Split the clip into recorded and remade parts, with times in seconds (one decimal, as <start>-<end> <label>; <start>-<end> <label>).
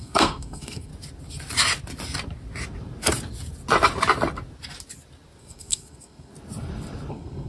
0.0-0.9 remade; 0.9-5.4 recorded; 5.4-6.3 remade; 6.3-7.1 recorded; 7.1-7.5 remade